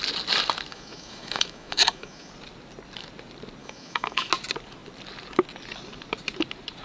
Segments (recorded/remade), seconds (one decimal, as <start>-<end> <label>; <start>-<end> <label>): 0.0-0.7 recorded; 0.7-2.3 remade; 2.3-3.6 recorded; 3.6-4.3 remade; 4.3-6.8 recorded